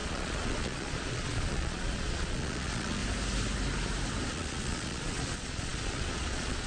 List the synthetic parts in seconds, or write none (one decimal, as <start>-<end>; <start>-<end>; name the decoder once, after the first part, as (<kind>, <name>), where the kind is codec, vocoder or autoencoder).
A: 0.0-3.0 (vocoder, Vocos); 4.3-6.7